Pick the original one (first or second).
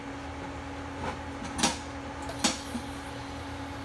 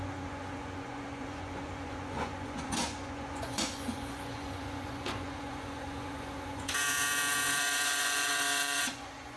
first